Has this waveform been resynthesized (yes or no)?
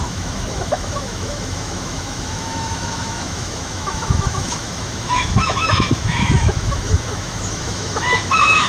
yes